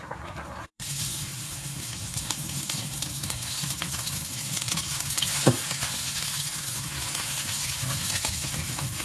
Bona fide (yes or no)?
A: no